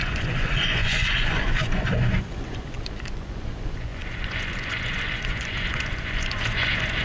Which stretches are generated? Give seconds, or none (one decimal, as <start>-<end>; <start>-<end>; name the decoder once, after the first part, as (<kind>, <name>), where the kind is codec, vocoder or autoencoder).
0.0-7.0 (vocoder, Vocos)